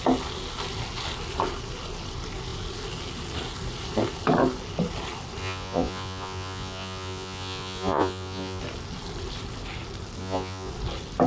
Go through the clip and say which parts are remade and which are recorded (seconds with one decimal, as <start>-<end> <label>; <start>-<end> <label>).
0.0-5.4 recorded; 5.4-8.6 remade; 8.6-10.2 recorded; 10.2-10.7 remade; 10.7-11.3 recorded